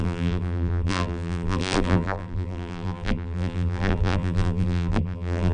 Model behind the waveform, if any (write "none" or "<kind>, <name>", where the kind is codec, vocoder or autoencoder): vocoder, BigVGAN v2